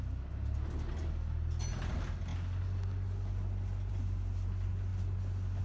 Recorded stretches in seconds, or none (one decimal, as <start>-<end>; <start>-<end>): 0.0-5.6